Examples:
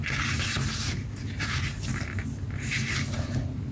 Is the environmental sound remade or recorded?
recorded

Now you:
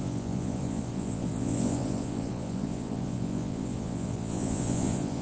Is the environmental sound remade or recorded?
remade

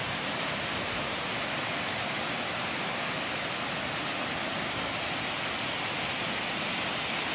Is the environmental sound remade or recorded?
recorded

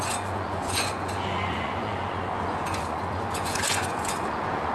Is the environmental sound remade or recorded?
remade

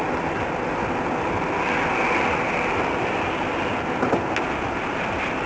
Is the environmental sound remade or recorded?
recorded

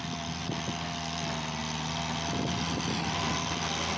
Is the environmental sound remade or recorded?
recorded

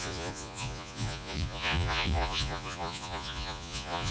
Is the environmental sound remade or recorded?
remade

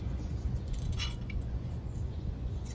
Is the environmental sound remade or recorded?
remade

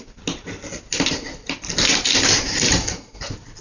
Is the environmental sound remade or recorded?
recorded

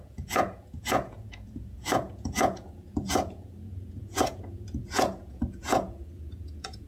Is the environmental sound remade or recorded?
remade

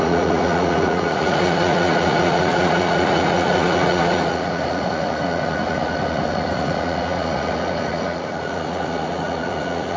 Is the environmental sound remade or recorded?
remade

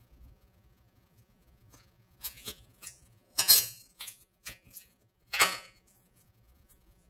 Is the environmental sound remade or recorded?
remade